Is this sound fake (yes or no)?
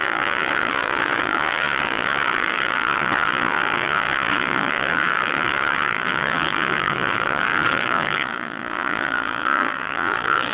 yes